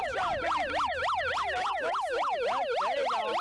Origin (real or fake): real